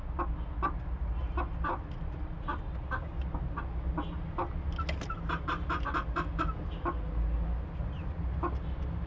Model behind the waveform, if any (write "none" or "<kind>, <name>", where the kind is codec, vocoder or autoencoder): none